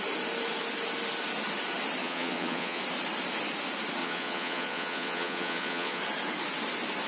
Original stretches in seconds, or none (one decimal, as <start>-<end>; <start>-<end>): 0.0-2.0; 2.8-4.0; 6.0-7.1